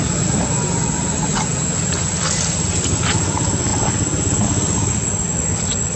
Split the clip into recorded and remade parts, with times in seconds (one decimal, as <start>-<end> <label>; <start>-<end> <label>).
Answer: 0.0-6.0 recorded